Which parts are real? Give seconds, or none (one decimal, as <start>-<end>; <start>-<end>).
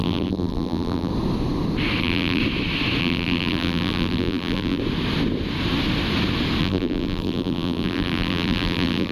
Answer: 1.1-2.0; 2.4-3.0; 4.8-6.6